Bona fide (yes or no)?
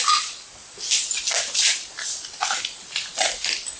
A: yes